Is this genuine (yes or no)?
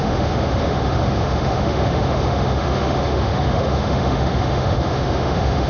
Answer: no